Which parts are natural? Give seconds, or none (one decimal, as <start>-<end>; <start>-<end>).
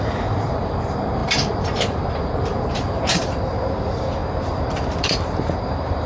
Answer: 4.2-5.0